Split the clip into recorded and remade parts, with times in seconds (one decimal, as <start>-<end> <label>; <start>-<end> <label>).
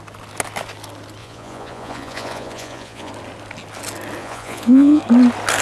0.0-1.2 recorded; 1.2-3.1 remade; 3.1-4.2 recorded; 4.2-5.0 remade; 5.0-5.6 recorded